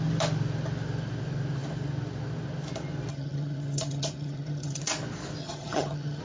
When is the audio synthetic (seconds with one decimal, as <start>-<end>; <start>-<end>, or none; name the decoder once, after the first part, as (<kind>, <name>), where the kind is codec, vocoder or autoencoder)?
3.1-4.8 (vocoder, HiFi-GAN); 5.4-6.2